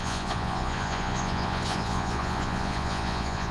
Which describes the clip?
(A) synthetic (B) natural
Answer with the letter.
A